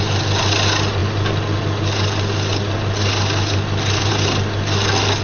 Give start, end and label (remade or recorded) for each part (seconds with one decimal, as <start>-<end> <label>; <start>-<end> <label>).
0.0-5.2 recorded